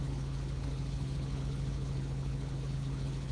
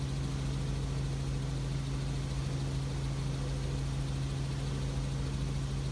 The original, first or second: second